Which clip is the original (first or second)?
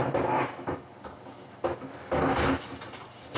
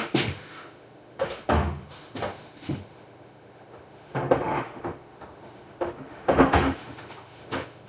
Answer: first